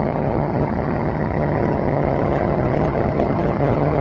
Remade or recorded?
remade